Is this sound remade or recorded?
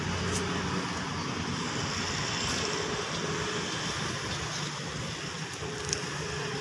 recorded